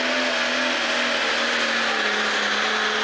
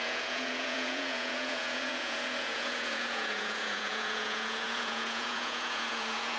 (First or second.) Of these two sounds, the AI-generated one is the second